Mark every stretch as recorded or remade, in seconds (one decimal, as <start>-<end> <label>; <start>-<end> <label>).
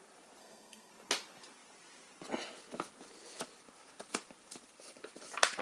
0.0-0.4 recorded; 0.4-0.9 remade; 0.9-5.6 recorded